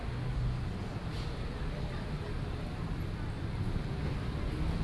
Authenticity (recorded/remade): recorded